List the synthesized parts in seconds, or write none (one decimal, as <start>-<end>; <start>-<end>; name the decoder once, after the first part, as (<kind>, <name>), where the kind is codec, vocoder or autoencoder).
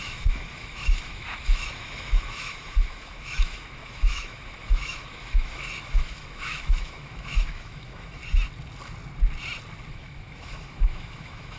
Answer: 0.0-8.2 (autoencoder, DAC-VAE); 9.9-11.6